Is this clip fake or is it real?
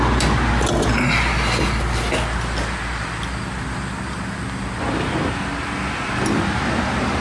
real